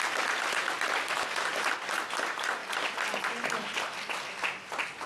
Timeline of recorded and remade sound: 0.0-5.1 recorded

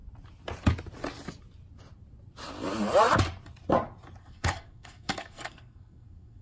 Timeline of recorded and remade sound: 0.0-4.2 recorded; 4.2-6.4 remade

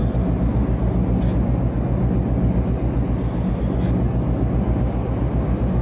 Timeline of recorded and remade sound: 0.0-5.8 recorded

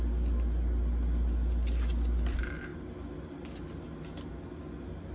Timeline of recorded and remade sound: 0.0-5.1 recorded

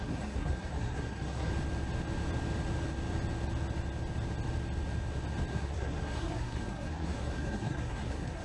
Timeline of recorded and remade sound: 0.0-1.5 remade; 1.5-5.5 recorded; 5.5-8.4 remade

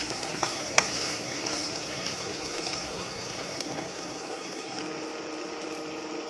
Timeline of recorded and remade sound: 0.0-4.8 remade; 4.8-6.3 recorded

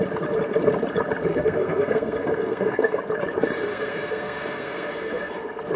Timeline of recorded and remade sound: 0.0-1.3 recorded; 1.3-3.0 remade; 3.0-3.7 recorded; 3.7-5.3 remade; 5.3-5.8 recorded